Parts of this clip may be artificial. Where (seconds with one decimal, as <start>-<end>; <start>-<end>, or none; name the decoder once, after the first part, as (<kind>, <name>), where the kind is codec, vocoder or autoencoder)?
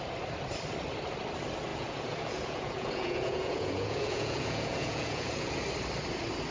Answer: 1.7-5.6 (vocoder, Vocos)